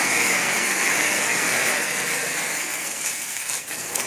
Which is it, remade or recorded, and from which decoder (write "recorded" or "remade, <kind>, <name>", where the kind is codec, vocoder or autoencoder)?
remade, codec, SNAC